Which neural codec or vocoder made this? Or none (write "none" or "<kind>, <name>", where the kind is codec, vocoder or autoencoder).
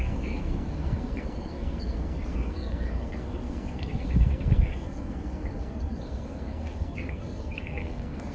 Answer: codec, SNAC